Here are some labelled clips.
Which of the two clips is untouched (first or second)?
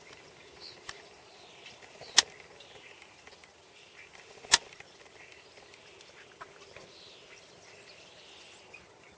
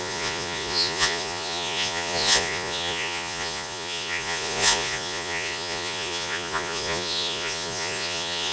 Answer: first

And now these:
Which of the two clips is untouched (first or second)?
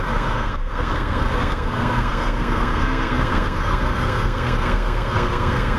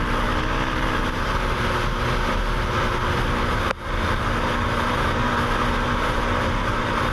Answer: second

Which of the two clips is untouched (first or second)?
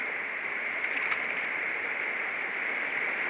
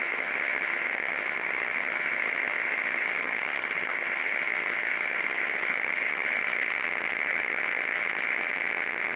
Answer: first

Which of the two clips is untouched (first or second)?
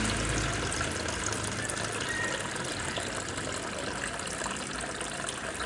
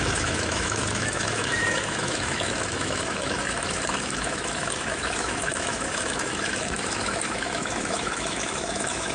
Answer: first